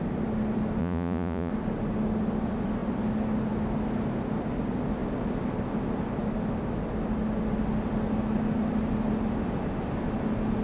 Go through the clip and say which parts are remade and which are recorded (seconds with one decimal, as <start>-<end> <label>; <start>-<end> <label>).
0.0-0.8 recorded; 0.8-1.5 remade; 1.5-10.6 recorded